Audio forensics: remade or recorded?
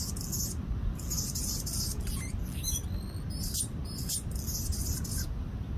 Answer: recorded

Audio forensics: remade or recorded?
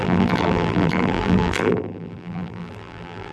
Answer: remade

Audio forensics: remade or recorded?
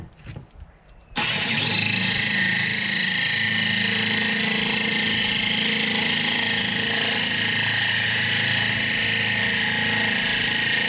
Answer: recorded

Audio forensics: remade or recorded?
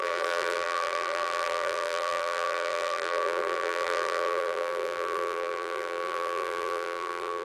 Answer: remade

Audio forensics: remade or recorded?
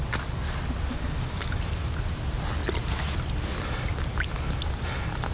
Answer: recorded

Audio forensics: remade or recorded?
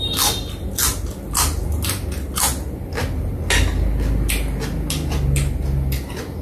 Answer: recorded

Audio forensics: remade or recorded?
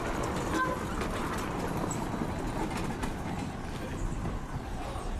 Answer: recorded